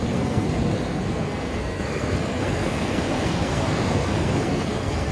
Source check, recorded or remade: remade